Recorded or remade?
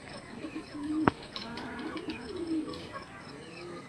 remade